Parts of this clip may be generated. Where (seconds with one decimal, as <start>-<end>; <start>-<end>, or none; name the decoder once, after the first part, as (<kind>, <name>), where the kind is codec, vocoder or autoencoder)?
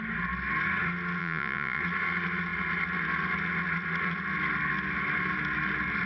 1.2-1.8 (vocoder, Vocos)